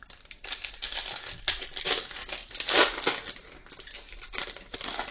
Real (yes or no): yes